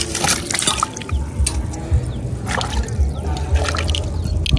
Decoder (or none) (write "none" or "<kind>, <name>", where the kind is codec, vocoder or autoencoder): none